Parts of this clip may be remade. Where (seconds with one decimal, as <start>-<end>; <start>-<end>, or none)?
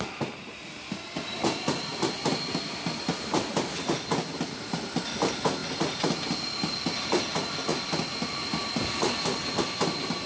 none